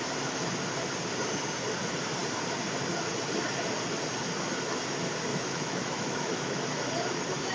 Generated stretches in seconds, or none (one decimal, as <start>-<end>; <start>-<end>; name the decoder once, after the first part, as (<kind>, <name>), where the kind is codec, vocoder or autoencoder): 5.3-6.6 (autoencoder, DAC-VAE)